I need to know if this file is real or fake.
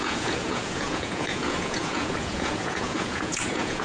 fake